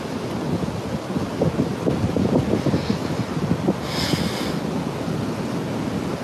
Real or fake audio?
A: real